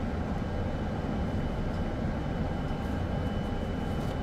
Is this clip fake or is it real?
real